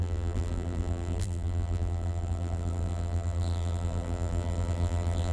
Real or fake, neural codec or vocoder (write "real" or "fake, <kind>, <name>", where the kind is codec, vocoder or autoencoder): fake, vocoder, BigVGAN v2